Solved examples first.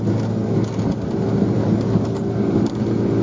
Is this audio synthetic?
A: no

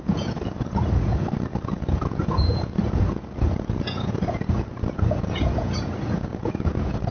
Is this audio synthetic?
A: yes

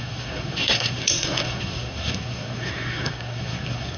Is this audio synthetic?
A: yes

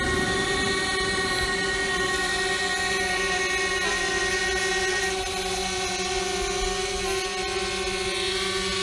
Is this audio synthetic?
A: no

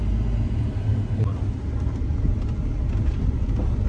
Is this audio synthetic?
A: no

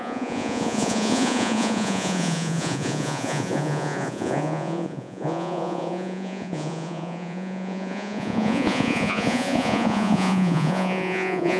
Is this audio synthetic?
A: yes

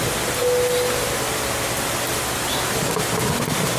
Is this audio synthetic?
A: no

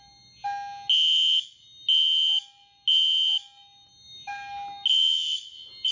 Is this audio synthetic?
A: no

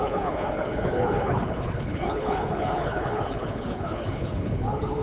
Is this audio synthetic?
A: yes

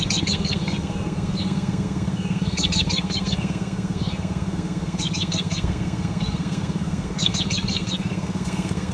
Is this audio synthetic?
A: yes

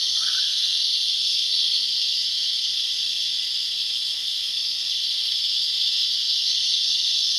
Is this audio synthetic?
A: yes